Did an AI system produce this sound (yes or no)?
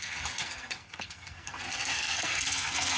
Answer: yes